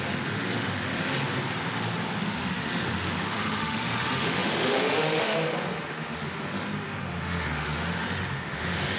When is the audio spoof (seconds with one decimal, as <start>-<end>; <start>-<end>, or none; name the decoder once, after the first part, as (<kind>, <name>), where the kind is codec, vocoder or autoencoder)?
0.0-1.0 (autoencoder, DAC-VAE); 2.2-9.0